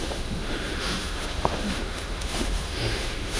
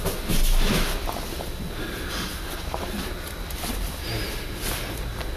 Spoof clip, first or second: first